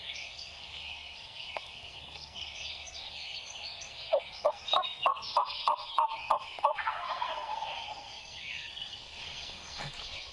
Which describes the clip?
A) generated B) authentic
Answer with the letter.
A